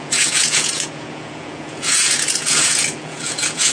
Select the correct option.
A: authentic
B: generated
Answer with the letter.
B